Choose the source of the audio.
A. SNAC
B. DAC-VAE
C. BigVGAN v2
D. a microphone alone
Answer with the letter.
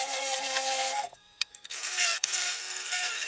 A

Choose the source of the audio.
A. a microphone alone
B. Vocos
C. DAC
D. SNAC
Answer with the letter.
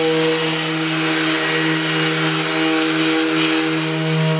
A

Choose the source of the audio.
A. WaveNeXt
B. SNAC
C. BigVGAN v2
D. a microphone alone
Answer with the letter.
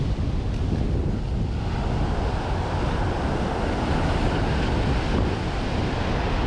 D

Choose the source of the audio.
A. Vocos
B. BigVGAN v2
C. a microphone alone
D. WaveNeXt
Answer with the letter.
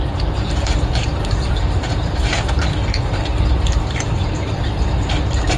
B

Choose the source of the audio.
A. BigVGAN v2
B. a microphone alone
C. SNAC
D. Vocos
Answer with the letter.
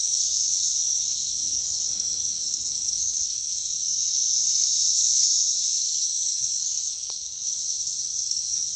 C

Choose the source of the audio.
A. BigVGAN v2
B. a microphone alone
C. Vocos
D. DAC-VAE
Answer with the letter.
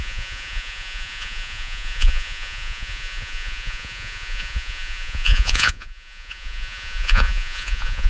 C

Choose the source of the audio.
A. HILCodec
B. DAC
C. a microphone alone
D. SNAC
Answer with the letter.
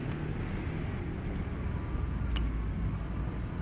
C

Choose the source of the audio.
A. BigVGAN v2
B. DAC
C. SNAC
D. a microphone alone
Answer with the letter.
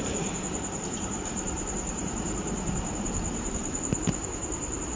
A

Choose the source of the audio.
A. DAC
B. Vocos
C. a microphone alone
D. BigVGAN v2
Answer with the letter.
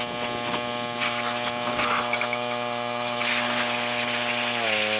C